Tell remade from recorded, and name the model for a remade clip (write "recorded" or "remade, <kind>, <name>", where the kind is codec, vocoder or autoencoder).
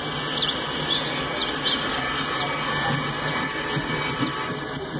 recorded